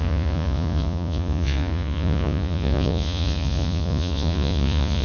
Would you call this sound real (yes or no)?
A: no